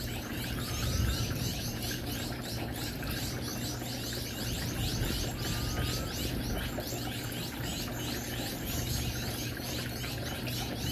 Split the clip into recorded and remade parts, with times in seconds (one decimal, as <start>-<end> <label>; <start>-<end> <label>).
0.0-3.5 remade; 3.5-7.2 recorded; 7.2-7.7 remade; 7.7-8.5 recorded; 8.5-10.9 remade